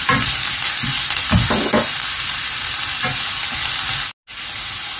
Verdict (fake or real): real